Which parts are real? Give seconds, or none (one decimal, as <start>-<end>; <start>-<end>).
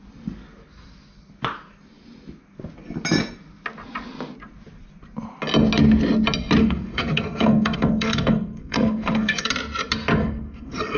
0.0-6.6; 9.5-10.2